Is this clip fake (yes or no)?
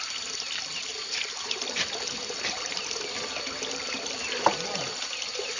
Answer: no